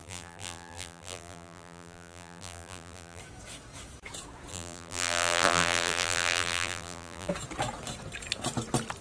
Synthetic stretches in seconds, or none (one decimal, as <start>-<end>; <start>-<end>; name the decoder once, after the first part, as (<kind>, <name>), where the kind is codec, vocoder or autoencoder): 0.0-3.2 (vocoder, BigVGAN v2); 4.5-7.3